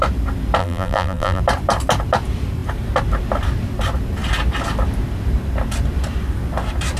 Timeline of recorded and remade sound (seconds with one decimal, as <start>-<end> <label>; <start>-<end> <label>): 0.0-0.6 recorded; 0.6-1.4 remade; 1.4-7.0 recorded